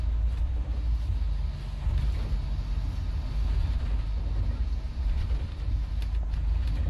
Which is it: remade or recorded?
recorded